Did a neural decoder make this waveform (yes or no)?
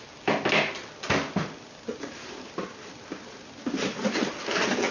no